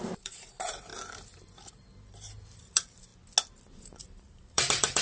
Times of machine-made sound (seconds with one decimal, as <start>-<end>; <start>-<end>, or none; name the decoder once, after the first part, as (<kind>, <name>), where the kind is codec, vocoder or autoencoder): 0.0-0.9 (vocoder, BigVGAN v2); 1.7-3.1; 3.7-5.0